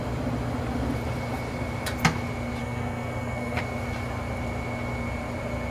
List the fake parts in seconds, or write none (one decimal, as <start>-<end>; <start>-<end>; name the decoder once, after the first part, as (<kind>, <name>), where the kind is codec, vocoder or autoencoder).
2.6-3.6 (codec, SNAC)